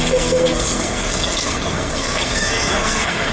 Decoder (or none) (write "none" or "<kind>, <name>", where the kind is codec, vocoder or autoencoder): codec, SNAC